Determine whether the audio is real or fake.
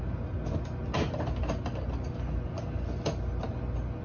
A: real